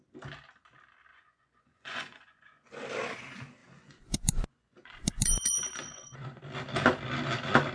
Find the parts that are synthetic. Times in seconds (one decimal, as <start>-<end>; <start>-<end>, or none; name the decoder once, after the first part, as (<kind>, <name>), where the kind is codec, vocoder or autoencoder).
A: 1.1-2.8 (vocoder, Vocos); 3.6-6.4